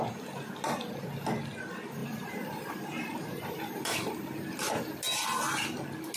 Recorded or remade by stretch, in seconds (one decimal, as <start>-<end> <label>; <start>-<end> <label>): 0.0-2.0 recorded; 2.0-4.9 remade; 4.9-6.2 recorded